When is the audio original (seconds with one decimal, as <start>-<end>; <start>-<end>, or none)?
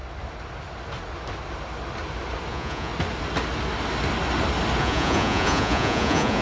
0.0-2.5; 2.9-4.8